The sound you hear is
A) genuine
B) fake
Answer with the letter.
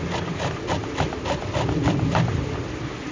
A